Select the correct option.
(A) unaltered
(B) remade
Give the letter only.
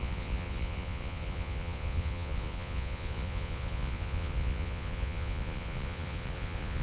B